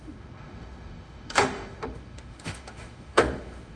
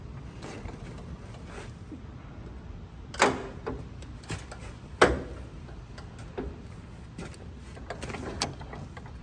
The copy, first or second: first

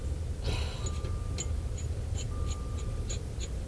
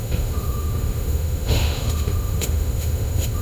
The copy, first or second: second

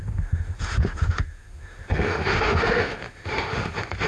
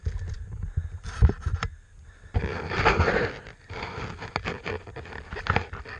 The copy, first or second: first